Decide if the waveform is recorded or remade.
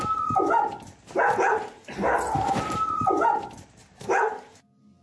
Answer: recorded